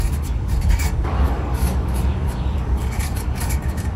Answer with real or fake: fake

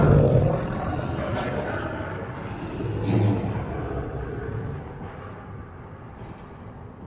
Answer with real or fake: real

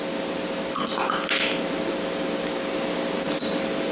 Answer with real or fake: real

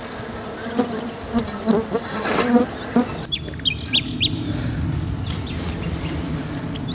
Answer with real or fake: real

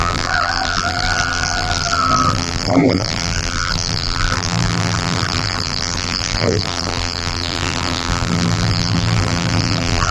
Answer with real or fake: fake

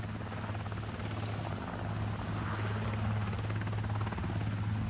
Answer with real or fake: real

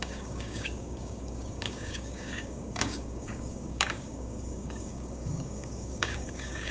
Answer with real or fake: fake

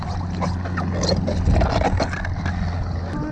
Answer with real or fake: real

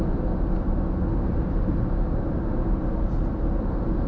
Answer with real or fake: real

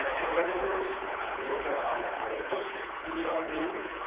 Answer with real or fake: fake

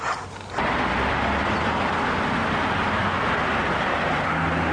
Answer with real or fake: real